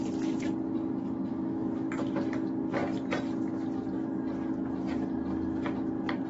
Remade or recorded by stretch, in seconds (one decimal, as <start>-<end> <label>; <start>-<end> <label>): 0.0-1.3 recorded; 1.3-1.9 remade; 1.9-6.3 recorded